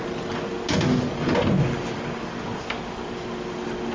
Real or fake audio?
real